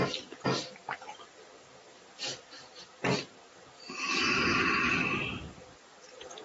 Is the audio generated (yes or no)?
no